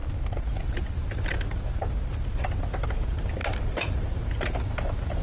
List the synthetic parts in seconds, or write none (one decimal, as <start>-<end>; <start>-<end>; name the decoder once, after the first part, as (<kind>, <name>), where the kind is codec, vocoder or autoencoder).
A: 3.4-4.0 (vocoder, BigVGAN v2)

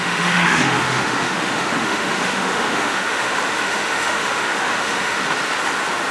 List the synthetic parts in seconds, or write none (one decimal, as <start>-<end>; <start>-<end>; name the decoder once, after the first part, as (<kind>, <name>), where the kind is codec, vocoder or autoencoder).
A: 0.0-5.2 (autoencoder, DAC-VAE)

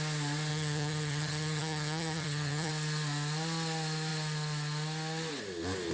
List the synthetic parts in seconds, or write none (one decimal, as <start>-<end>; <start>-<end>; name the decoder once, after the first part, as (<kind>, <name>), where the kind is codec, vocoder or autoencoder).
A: 0.5-2.7 (vocoder, HiFi-GAN)

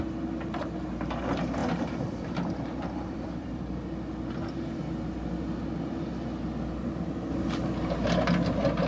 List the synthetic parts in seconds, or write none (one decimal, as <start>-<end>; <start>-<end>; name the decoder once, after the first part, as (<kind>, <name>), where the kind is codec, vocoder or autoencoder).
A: 1.6-3.8 (vocoder, BigVGAN v2)

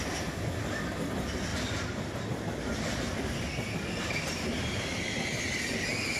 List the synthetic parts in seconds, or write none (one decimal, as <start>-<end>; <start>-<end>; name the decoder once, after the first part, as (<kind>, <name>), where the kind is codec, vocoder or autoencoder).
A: none

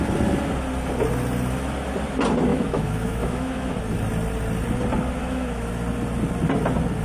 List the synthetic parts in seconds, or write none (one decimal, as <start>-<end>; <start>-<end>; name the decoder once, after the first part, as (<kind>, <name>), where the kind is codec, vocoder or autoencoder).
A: 2.5-3.7 (autoencoder, DAC-VAE); 5.2-5.7

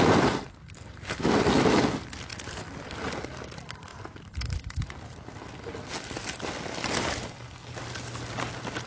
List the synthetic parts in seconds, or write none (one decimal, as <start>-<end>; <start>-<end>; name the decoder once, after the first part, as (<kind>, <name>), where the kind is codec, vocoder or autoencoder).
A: none

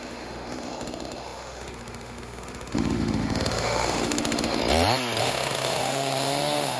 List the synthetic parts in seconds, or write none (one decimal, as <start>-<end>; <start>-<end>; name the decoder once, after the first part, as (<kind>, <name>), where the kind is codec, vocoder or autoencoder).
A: 0.0-4.6 (autoencoder, DAC-VAE); 5.2-6.8